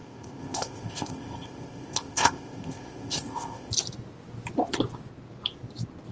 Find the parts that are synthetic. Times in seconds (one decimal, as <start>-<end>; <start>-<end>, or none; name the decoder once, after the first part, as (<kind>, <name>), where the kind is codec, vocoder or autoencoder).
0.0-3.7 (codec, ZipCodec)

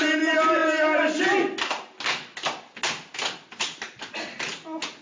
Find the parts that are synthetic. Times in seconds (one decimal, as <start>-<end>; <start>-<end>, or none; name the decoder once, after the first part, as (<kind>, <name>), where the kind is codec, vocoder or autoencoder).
none

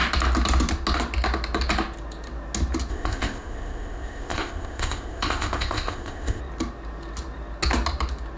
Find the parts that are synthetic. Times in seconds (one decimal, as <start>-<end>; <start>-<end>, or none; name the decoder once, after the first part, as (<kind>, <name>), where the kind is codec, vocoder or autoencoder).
2.9-6.4 (codec, ZipCodec)